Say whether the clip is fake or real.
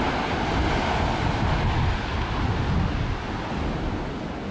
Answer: real